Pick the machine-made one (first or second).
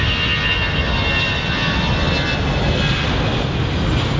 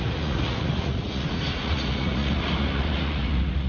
second